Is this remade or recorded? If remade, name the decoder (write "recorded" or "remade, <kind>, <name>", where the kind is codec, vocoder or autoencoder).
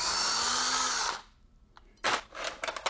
recorded